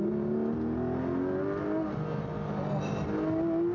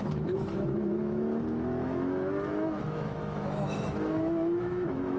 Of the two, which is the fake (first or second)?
second